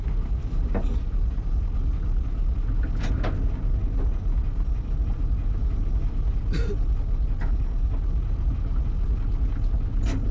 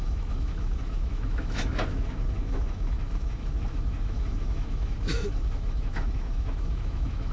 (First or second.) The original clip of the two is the first